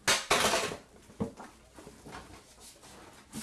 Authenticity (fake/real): real